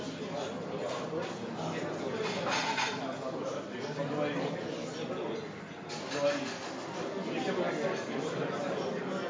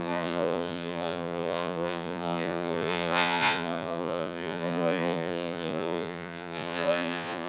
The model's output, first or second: second